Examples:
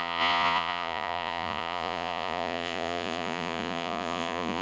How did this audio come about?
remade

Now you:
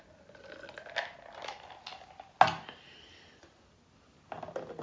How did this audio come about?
recorded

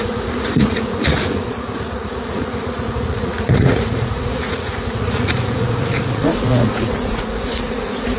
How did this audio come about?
remade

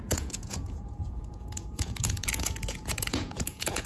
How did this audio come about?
remade